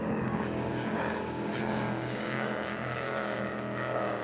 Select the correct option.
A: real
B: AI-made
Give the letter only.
B